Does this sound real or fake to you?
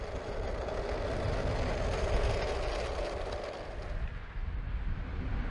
real